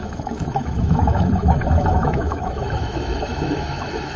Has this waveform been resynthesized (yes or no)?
yes